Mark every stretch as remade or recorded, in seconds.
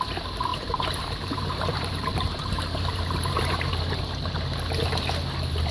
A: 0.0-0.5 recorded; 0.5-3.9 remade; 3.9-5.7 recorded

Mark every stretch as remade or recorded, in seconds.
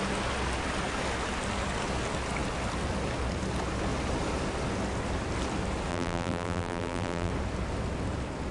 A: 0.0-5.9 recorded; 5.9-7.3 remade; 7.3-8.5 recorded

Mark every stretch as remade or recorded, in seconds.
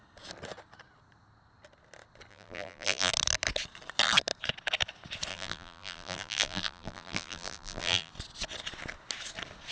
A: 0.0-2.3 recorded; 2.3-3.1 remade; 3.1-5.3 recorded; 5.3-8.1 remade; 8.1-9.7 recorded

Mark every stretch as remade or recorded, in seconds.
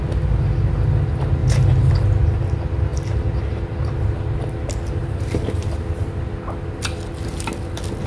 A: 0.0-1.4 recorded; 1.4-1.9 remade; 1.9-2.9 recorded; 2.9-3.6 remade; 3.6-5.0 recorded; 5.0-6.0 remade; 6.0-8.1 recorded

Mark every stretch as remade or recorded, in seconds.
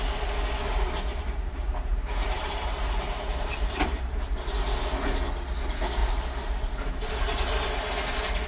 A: 0.0-1.1 recorded; 1.1-4.3 remade; 4.3-8.5 recorded